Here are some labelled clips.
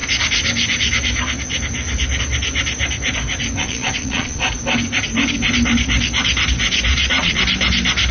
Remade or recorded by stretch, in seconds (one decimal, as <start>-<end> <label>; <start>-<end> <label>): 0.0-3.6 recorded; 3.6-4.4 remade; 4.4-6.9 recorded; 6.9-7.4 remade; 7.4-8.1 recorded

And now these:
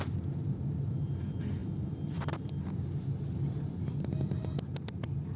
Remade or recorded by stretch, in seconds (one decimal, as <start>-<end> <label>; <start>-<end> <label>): 0.0-5.4 recorded

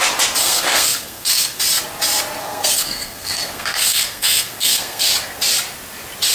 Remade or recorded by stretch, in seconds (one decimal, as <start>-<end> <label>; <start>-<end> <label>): 0.0-0.4 recorded; 0.4-1.6 remade; 1.6-2.4 recorded; 2.4-5.1 remade; 5.1-6.3 recorded

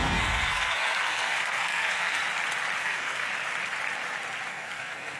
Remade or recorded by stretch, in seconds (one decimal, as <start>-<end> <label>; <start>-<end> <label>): 0.0-2.2 remade; 2.2-2.8 recorded; 2.8-3.3 remade; 3.3-4.5 recorded; 4.5-5.2 remade